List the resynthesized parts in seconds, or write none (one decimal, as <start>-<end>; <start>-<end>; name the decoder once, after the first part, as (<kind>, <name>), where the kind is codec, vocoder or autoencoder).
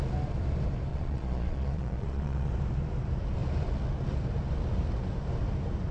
0.9-2.5 (vocoder, Vocos)